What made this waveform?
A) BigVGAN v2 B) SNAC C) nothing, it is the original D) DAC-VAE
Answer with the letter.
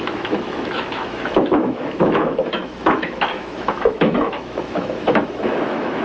D